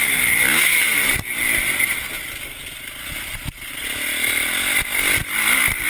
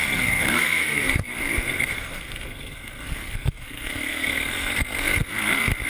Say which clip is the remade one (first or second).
second